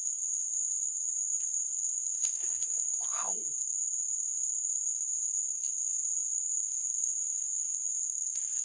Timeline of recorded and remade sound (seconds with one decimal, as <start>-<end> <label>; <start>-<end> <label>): 0.0-8.6 remade